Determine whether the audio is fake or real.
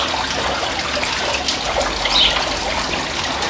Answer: real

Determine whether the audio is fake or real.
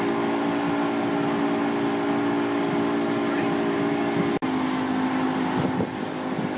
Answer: real